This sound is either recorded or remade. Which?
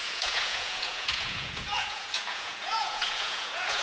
remade